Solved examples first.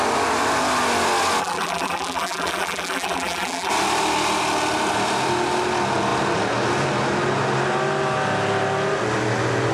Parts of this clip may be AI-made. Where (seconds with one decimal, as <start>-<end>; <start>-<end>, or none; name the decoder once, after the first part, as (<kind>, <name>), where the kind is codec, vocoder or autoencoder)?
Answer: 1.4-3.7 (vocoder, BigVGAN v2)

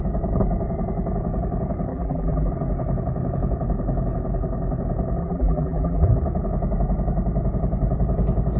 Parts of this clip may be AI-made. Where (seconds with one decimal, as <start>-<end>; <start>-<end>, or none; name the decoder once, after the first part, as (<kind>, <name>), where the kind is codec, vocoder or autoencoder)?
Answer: 1.9-2.5 (vocoder, BigVGAN v2); 5.2-6.1

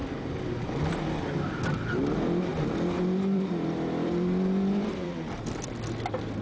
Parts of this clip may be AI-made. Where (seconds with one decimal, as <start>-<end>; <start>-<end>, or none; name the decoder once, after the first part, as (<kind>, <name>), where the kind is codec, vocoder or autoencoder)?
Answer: 2.5-5.7 (vocoder, BigVGAN v2)

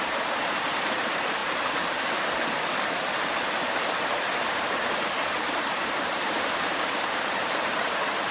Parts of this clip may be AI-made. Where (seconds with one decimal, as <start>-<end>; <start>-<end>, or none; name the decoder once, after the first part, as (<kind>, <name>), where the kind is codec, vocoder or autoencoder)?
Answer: 0.0-1.4 (vocoder, BigVGAN v2); 3.7-8.3

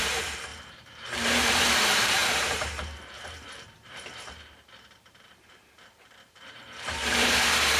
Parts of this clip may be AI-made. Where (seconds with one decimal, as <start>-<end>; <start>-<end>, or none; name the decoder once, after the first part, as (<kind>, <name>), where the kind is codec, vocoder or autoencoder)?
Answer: 0.0-7.8 (vocoder, BigVGAN v2)